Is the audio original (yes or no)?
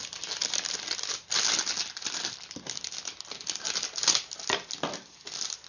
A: yes